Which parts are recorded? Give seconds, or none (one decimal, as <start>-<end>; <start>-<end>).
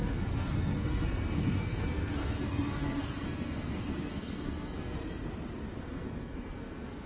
5.0-5.8